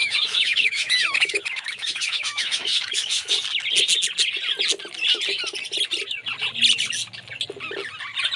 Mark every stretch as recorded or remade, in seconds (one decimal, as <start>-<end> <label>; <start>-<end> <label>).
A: 0.0-3.3 remade; 3.3-8.4 recorded